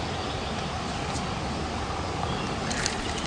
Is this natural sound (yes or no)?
yes